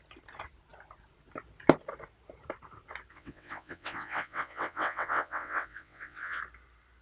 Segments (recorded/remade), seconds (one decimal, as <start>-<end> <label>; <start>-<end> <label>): 0.0-3.1 recorded; 3.1-6.4 remade; 6.4-7.0 recorded